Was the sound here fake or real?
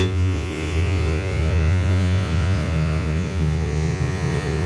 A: fake